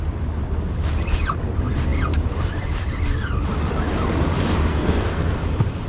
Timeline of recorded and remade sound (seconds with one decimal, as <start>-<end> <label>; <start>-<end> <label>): 0.0-4.7 recorded; 4.7-5.4 remade; 5.4-5.9 recorded